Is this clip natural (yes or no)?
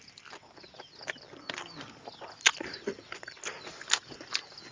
yes